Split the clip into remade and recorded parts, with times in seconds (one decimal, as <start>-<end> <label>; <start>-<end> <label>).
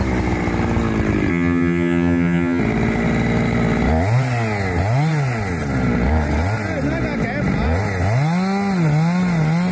0.0-1.3 recorded; 1.3-2.6 remade; 2.6-9.7 recorded